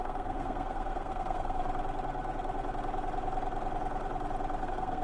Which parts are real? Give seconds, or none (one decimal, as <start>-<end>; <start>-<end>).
1.6-4.6